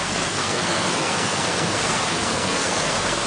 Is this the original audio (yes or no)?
no